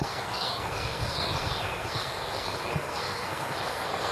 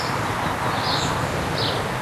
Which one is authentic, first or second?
second